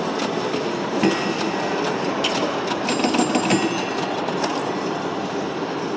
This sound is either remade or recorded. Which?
recorded